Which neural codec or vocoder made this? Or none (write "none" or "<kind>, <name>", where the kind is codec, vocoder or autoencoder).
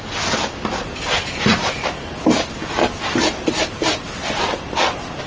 none